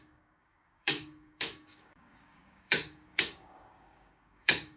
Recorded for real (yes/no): no